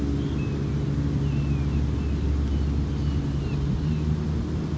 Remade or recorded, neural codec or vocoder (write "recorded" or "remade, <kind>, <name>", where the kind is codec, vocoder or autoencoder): recorded